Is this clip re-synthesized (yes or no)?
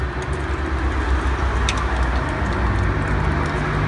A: no